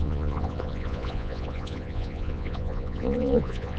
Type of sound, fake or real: fake